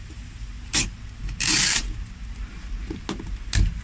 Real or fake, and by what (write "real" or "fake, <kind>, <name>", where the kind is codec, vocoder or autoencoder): real